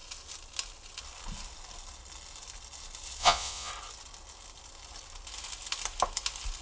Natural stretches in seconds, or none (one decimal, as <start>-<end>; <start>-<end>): 0.0-3.2; 3.7-6.6